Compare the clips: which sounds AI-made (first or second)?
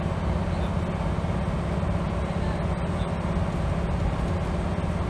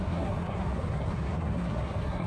second